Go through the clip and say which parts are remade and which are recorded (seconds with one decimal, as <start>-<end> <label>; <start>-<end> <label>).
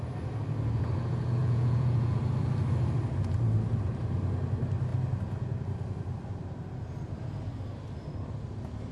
0.0-1.4 recorded; 1.4-2.2 remade; 2.2-8.9 recorded